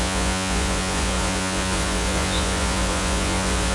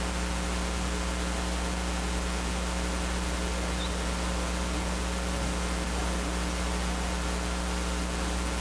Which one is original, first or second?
second